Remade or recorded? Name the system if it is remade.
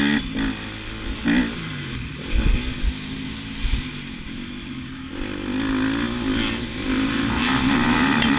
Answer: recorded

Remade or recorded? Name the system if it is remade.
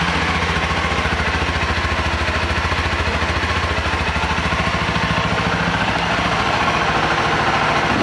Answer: recorded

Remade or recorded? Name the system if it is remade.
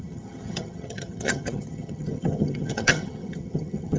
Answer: remade, vocoder, HiFi-GAN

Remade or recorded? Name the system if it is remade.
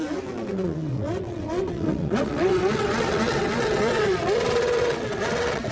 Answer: remade, vocoder, WaveNeXt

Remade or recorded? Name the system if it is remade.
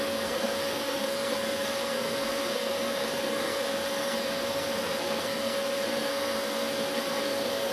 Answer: remade, codec, SNAC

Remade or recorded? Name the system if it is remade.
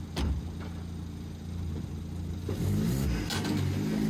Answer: recorded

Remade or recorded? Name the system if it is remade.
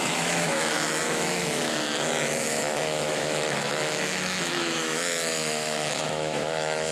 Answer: remade, autoencoder, DAC-VAE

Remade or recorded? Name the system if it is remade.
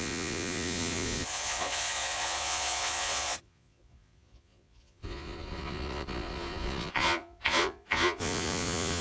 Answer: remade, vocoder, Vocos